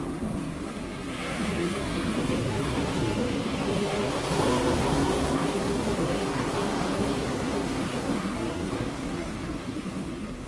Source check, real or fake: fake